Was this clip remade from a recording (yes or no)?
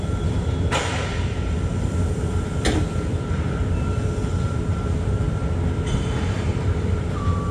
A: yes